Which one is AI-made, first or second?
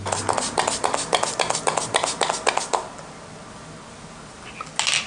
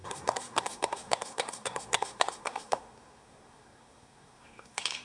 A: second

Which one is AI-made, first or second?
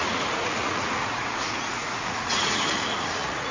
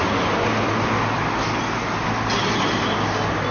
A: first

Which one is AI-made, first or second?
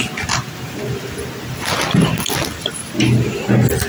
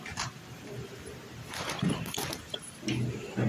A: second